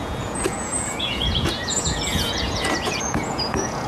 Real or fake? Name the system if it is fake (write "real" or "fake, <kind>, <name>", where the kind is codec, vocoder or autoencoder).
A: fake, vocoder, Vocos